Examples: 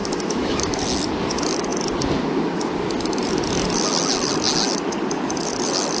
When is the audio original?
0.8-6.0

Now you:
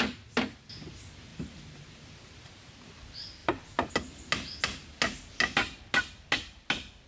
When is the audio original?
0.0-1.3; 2.9-7.1

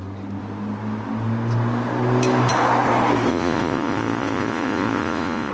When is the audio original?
0.0-3.3